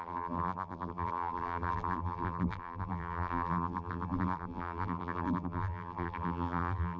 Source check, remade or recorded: remade